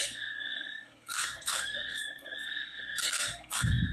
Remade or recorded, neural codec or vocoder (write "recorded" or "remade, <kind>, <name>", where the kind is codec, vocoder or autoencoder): remade, codec, SNAC